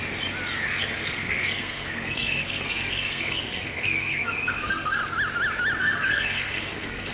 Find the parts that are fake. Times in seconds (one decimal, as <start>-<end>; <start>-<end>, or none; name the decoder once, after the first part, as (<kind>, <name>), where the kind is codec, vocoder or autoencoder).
0.8-5.0 (codec, SNAC); 5.8-7.1